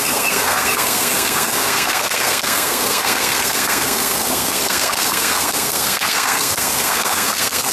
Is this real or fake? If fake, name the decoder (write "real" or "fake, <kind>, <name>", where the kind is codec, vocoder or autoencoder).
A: fake, codec, SNAC